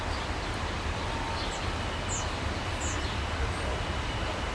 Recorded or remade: recorded